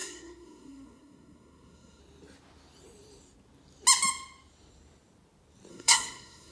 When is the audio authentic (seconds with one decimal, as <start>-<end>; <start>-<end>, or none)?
2.0-5.7